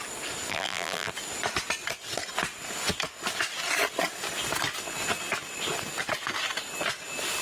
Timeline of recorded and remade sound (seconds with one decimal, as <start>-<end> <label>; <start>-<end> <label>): 0.0-0.5 recorded; 0.5-1.1 remade; 1.1-7.4 recorded